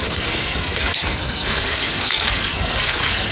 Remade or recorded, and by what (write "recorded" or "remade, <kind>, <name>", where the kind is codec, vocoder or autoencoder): remade, codec, SNAC